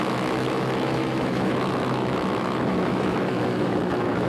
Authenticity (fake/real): fake